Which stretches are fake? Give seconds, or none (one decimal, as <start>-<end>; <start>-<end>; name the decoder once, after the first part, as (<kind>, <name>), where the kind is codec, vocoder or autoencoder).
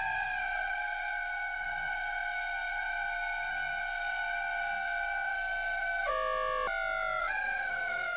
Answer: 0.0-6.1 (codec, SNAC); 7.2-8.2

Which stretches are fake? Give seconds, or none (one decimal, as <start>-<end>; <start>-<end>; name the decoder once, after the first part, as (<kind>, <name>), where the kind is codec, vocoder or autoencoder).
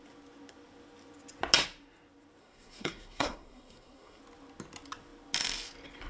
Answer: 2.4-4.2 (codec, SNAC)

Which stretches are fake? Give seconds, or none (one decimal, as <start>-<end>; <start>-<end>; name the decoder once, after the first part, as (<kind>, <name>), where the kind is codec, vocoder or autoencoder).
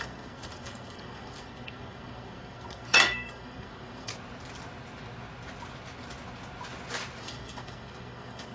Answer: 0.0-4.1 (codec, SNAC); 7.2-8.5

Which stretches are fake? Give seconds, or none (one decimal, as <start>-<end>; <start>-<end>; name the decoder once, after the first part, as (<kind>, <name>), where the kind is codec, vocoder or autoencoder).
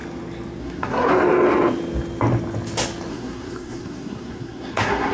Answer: 0.6-1.1 (codec, SNAC); 3.1-5.1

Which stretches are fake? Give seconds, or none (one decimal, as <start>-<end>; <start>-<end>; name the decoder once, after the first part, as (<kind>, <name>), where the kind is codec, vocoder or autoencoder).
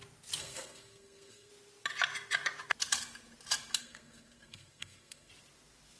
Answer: 0.4-1.5 (codec, SNAC); 3.8-5.3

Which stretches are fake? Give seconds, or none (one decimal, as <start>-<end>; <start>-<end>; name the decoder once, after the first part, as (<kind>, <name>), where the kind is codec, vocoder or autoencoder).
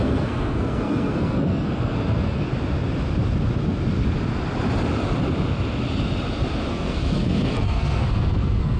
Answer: 0.0-2.5 (codec, SNAC); 6.7-8.8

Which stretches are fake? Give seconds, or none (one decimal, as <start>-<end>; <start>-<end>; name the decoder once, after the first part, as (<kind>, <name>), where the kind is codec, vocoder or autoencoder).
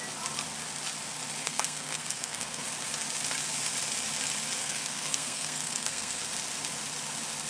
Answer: 1.4-2.6 (codec, SNAC); 4.6-6.2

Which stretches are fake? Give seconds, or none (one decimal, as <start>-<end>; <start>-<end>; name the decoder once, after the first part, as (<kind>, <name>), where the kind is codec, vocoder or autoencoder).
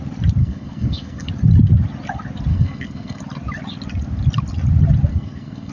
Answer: 0.4-1.3 (codec, SNAC); 2.5-3.2; 5.1-5.7